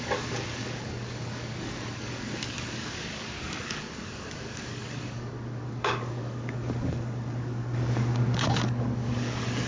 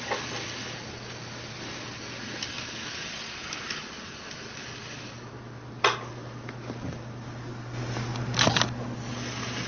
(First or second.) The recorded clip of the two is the second